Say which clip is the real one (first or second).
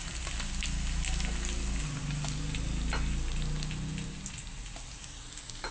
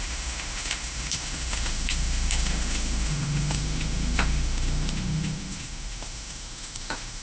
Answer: first